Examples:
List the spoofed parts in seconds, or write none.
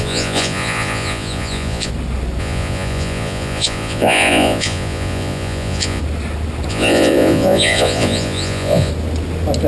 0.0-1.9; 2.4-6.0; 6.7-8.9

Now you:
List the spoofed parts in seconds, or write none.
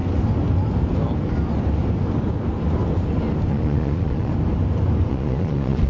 3.5-4.3; 5.1-5.9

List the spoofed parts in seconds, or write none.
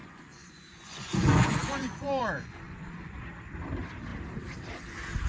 0.0-3.2